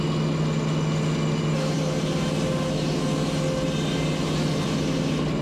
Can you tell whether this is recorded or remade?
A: recorded